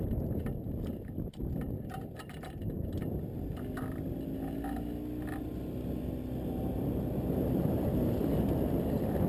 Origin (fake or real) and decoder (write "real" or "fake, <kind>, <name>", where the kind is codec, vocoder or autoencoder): real